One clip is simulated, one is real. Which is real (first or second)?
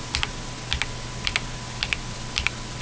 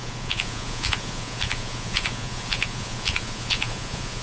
first